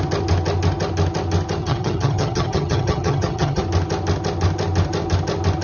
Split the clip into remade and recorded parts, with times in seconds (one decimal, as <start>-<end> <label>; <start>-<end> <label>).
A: 0.0-1.6 recorded; 1.6-3.6 remade; 3.6-5.6 recorded